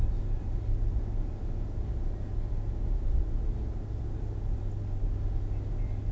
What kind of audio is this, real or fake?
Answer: real